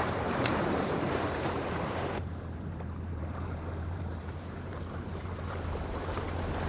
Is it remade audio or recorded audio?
remade